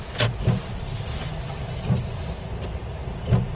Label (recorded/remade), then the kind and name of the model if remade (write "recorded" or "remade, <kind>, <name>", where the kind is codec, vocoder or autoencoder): recorded